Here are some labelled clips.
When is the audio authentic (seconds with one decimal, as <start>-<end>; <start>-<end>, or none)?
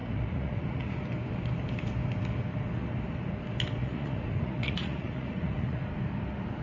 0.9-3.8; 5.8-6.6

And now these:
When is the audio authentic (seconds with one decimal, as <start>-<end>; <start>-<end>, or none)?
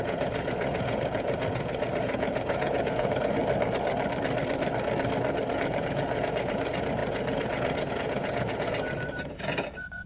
3.4-5.5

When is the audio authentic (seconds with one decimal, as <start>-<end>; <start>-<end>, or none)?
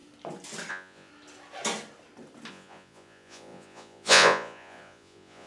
0.0-0.7; 1.1-2.5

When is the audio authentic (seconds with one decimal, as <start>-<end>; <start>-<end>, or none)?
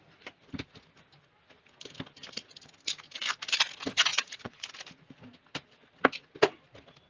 0.0-4.1; 4.7-7.1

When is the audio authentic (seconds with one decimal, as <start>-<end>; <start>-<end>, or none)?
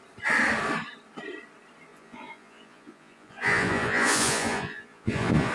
0.0-1.9